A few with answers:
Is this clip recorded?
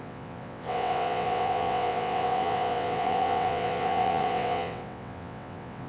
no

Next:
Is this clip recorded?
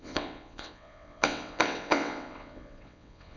no